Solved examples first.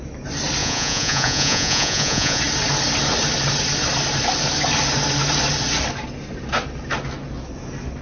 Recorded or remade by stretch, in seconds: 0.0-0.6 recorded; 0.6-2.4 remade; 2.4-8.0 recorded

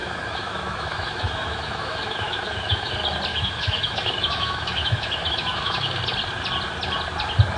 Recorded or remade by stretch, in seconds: 0.0-2.9 remade; 2.9-3.3 recorded; 3.3-6.0 remade; 6.0-7.6 recorded

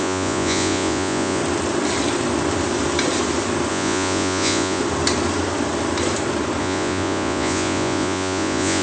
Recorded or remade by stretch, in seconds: 0.0-1.4 remade; 1.4-3.7 recorded; 3.7-4.8 remade; 4.8-6.6 recorded; 6.6-8.8 remade

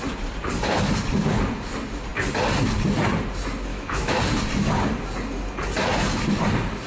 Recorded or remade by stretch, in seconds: 0.0-3.7 recorded; 3.7-4.2 remade; 4.2-6.9 recorded

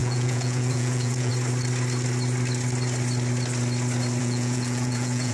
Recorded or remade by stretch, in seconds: 0.0-1.3 remade; 1.3-4.2 recorded; 4.2-5.3 remade

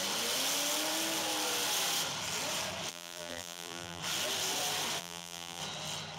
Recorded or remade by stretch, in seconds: 0.0-2.9 recorded; 2.9-4.0 remade; 4.0-5.0 recorded; 5.0-5.6 remade; 5.6-6.2 recorded